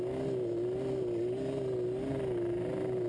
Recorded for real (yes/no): yes